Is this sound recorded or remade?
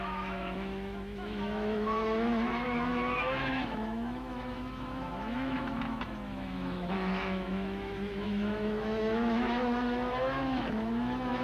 remade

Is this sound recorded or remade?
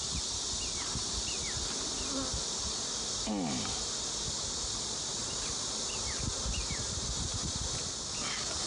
recorded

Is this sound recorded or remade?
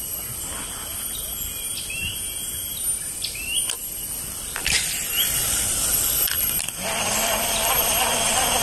recorded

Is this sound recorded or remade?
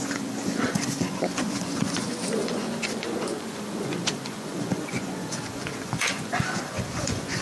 remade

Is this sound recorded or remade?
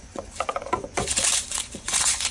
remade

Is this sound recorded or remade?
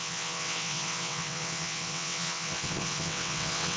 remade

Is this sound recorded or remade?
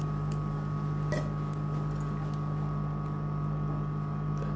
recorded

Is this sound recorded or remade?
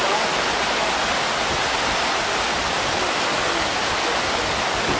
recorded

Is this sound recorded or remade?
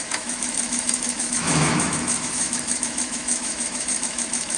remade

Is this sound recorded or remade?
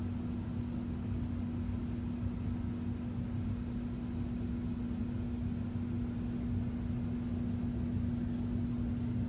recorded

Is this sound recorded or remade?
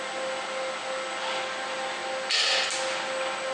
recorded